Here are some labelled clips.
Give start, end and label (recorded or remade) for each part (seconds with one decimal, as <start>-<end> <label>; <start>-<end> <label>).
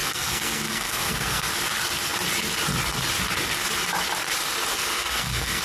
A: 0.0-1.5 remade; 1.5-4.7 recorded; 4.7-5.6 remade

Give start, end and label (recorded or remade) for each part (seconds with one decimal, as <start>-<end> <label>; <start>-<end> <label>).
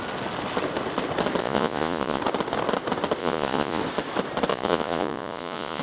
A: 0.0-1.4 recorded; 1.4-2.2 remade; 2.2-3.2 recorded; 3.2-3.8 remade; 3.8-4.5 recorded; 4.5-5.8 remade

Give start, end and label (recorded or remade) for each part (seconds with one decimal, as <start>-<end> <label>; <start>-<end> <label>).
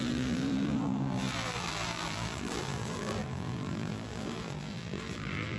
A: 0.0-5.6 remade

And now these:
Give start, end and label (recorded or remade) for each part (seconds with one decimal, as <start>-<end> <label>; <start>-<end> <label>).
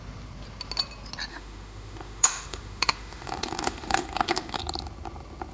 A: 0.0-1.3 recorded; 1.3-4.6 remade; 4.6-5.5 recorded